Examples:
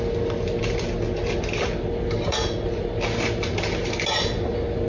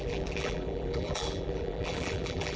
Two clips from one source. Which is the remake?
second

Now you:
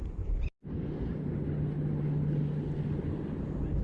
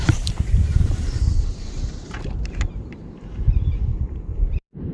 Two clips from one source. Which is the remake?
second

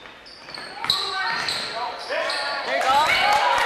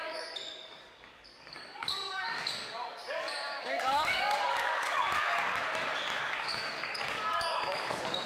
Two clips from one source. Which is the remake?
second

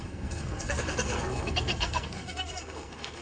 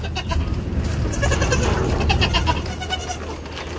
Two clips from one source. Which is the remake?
first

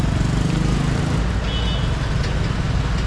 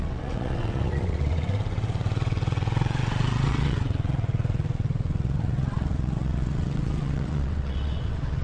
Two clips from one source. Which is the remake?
second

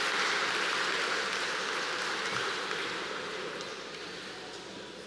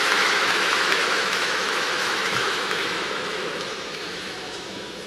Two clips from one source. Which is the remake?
second